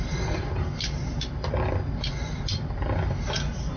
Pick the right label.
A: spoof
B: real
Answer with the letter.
B